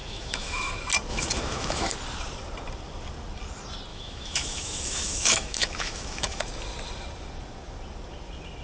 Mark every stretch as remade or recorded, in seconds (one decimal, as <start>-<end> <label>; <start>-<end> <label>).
0.0-0.7 remade; 0.7-1.1 recorded; 1.1-1.9 remade; 1.9-3.9 recorded; 3.9-6.4 remade; 6.4-8.6 recorded